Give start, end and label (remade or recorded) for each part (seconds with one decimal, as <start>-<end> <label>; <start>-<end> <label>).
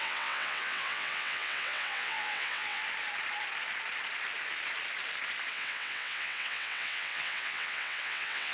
0.0-2.8 remade; 2.8-5.5 recorded; 5.5-8.5 remade